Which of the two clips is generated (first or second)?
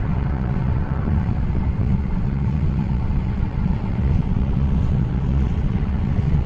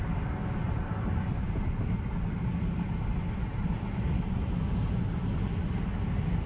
first